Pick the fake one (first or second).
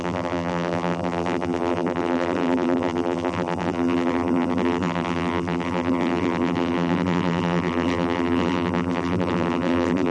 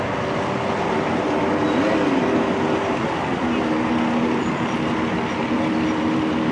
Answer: first